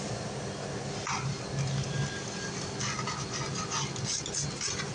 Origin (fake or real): real